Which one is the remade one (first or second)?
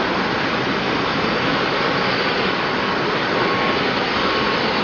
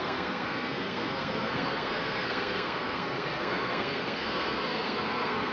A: second